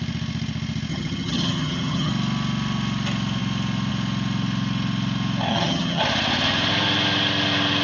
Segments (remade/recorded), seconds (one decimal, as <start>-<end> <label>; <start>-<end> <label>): 0.0-0.9 recorded; 0.9-2.1 remade; 2.1-5.5 recorded; 5.5-6.0 remade; 6.0-7.8 recorded